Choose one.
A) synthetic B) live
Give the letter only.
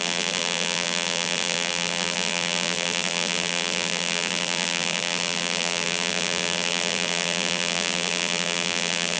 A